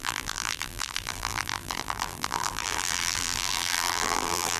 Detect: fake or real fake